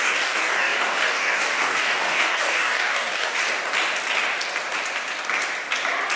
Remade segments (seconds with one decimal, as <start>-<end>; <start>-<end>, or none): 0.0-3.4